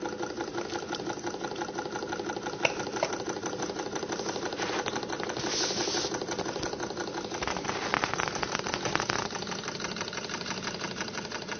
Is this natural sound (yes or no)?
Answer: yes